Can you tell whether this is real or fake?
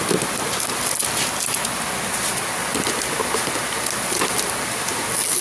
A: real